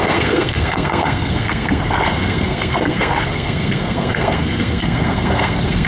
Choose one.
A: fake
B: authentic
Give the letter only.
A